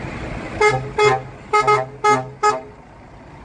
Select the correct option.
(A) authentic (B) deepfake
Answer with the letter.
A